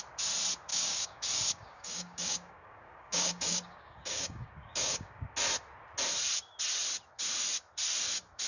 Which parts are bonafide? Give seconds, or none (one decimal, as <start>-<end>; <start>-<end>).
0.0-0.7; 5.3-8.5